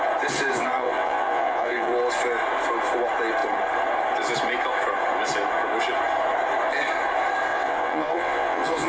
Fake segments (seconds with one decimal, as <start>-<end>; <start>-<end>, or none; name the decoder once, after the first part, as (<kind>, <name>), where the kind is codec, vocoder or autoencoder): 0.5-1.9 (vocoder, WaveNeXt); 7.5-8.9